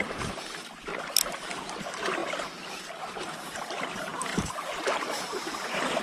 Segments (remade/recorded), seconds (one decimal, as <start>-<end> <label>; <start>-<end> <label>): 0.0-0.9 remade; 0.9-1.7 recorded; 1.7-6.0 remade